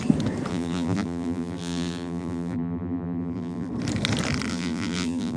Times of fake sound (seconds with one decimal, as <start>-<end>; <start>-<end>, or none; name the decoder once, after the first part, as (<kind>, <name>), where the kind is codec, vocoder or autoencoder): 0.5-3.7 (vocoder, BigVGAN v2); 4.5-5.4